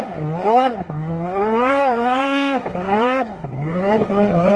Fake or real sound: fake